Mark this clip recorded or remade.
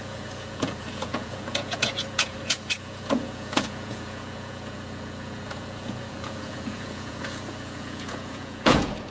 remade